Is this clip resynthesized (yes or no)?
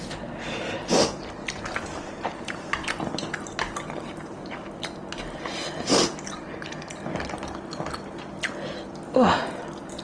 no